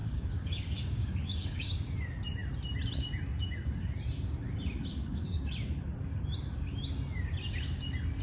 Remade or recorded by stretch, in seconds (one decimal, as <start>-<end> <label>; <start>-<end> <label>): 0.0-1.7 remade; 1.7-4.9 recorded; 4.9-5.5 remade; 5.5-8.2 recorded